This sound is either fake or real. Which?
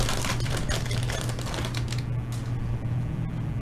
real